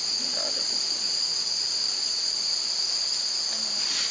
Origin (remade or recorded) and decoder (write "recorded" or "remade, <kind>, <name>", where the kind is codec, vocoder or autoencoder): recorded